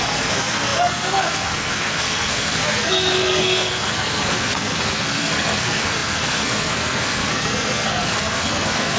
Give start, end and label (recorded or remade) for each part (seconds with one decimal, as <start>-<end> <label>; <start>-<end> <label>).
0.0-9.0 remade